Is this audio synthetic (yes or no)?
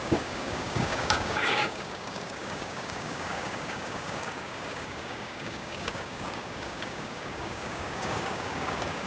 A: yes